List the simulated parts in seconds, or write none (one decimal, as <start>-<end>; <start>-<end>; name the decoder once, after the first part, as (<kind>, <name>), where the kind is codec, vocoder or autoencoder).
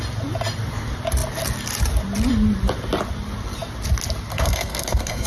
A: 4.3-5.3 (codec, SNAC)